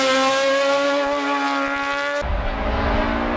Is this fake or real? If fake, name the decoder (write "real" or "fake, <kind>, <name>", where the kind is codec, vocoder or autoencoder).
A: real